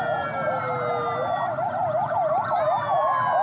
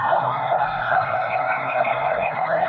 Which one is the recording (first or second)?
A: first